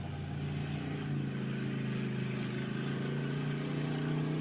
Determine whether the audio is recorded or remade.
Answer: recorded